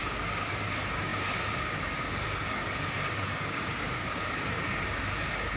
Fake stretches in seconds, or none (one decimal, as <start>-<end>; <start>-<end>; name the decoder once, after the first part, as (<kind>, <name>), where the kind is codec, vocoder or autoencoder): 0.0-5.6 (codec, DAC)